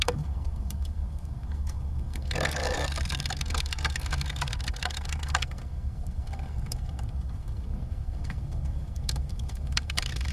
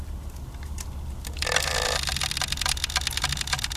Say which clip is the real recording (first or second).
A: second